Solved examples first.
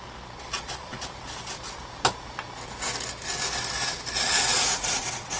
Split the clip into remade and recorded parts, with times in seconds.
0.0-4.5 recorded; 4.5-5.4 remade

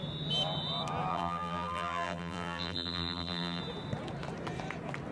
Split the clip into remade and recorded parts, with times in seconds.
0.0-1.1 recorded; 1.1-3.6 remade; 3.6-5.1 recorded

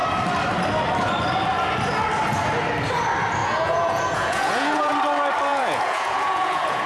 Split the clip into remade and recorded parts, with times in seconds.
0.0-3.4 recorded; 3.4-4.9 remade; 4.9-5.5 recorded; 5.5-6.9 remade